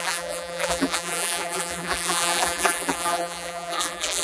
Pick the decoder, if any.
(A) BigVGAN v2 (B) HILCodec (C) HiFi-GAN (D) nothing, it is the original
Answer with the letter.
A